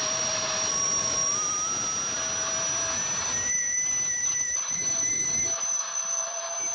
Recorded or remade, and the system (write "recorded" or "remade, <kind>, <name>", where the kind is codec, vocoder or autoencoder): remade, vocoder, BigVGAN v2